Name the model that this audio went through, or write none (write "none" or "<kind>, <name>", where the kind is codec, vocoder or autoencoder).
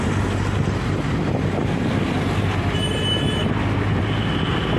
none